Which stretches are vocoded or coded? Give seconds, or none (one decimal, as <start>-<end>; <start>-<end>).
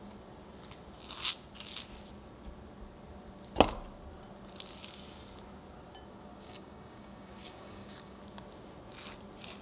6.3-8.2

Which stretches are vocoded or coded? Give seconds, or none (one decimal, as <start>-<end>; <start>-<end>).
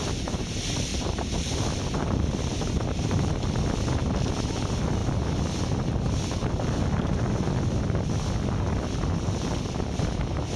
0.9-3.3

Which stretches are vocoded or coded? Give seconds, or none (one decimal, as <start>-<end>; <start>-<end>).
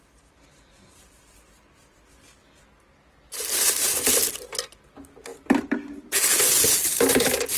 5.3-7.1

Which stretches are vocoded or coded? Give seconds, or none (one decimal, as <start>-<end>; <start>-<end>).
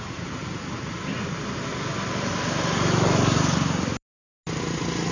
none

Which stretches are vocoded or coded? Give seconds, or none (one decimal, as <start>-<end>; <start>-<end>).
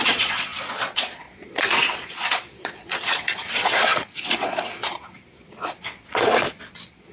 0.0-7.1